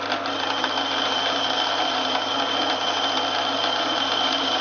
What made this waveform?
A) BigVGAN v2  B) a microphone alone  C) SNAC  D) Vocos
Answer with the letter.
B